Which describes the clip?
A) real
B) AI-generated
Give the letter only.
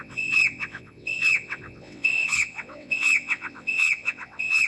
B